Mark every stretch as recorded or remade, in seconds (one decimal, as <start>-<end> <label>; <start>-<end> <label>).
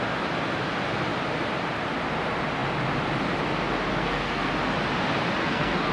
0.0-3.9 recorded; 3.9-4.5 remade; 4.5-5.4 recorded; 5.4-5.9 remade